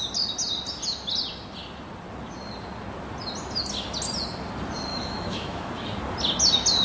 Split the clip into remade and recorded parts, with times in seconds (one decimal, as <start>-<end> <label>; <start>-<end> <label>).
0.0-4.9 recorded; 4.9-5.7 remade; 5.7-6.8 recorded